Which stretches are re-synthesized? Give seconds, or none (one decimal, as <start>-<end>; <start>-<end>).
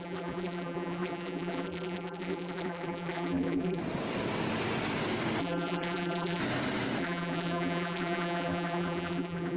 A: 0.0-3.8; 5.4-6.4; 7.0-9.6